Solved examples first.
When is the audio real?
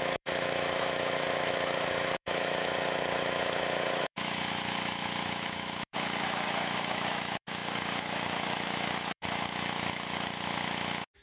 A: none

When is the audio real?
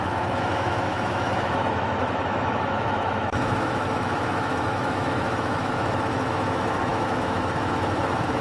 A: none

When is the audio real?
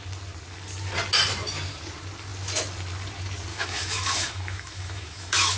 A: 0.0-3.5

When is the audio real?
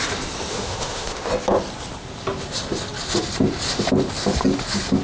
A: 0.0-0.5; 1.3-5.0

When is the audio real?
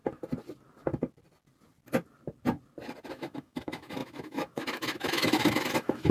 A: 0.0-3.1